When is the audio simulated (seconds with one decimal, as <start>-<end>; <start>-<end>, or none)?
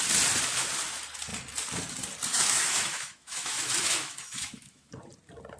2.3-4.9